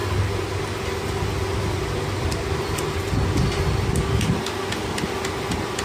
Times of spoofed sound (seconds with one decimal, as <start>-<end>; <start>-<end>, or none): none